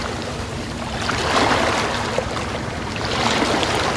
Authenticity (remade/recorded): recorded